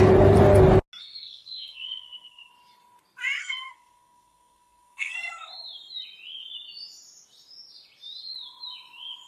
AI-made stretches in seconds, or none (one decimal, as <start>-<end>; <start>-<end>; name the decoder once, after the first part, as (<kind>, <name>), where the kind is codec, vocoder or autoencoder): 1.0-2.5 (codec, SNAC); 3.4-5.5